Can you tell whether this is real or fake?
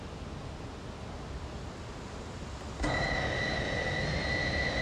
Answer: real